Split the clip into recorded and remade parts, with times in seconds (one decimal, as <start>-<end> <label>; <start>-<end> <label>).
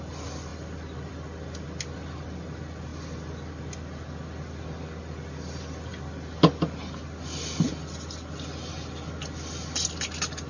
0.0-10.5 recorded